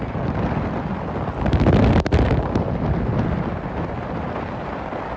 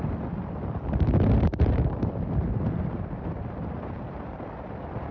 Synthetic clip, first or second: second